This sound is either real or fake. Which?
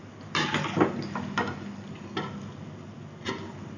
real